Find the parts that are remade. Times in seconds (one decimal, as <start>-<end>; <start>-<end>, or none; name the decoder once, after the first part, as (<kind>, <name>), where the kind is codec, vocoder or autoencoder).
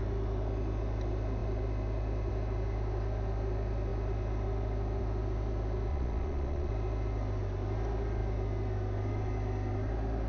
5.9-6.7 (vocoder, Vocos)